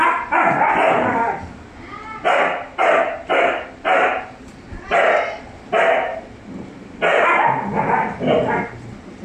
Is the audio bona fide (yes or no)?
yes